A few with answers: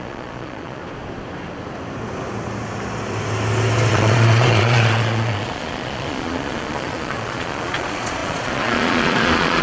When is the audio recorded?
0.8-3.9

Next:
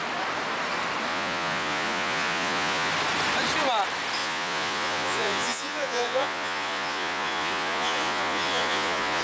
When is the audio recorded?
0.0-1.1; 2.9-4.2

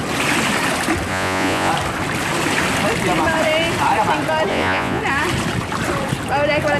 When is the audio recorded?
0.0-1.1; 1.7-4.5; 5.0-6.8

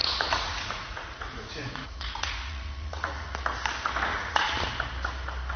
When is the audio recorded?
3.4-4.1; 4.7-5.6

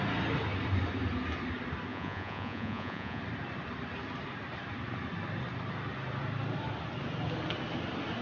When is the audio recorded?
0.0-1.9; 3.2-8.2

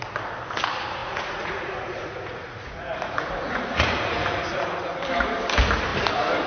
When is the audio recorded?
0.0-1.0; 4.6-6.5

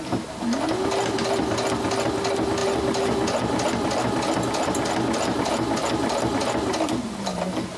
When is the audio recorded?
0.0-7.8

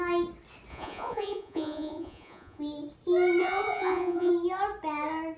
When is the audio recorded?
0.0-0.7; 2.6-3.4; 4.3-5.4